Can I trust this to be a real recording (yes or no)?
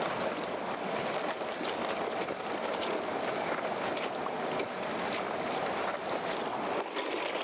no